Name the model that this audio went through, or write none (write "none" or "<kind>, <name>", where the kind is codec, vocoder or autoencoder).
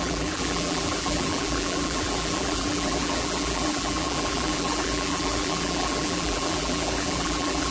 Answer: vocoder, BigVGAN v2